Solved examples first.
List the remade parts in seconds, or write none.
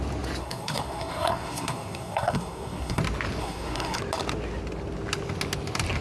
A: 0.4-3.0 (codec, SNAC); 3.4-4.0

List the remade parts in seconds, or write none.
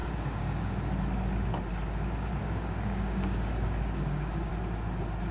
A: 0.0-0.9 (codec, DAC); 2.4-4.5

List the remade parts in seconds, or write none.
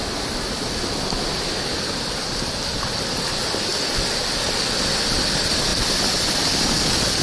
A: none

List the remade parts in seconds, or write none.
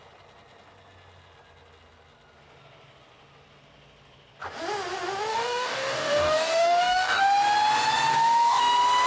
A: 5.3-7.2 (codec, DAC); 8.1-8.6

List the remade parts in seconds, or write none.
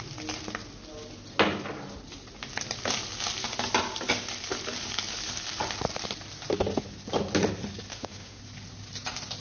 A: 7.9-8.4 (autoencoder, DAC-VAE)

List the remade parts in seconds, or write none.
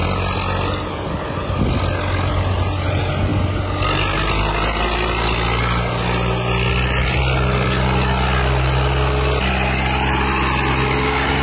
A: none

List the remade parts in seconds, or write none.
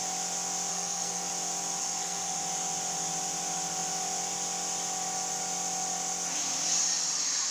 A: 0.7-1.3 (codec, SNAC); 1.8-2.4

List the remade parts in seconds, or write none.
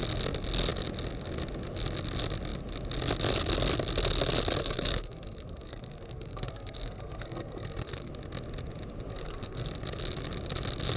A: 4.6-8.1 (codec, SNAC); 9.1-9.7